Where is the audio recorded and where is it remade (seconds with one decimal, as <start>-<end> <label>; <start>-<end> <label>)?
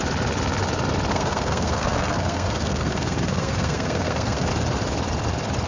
0.0-1.1 recorded; 1.1-4.5 remade; 4.5-5.7 recorded